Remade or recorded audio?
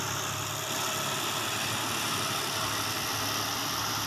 recorded